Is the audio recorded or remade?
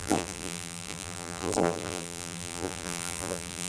remade